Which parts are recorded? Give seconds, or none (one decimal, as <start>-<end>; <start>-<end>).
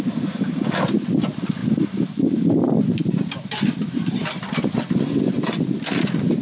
0.0-1.6; 5.4-6.4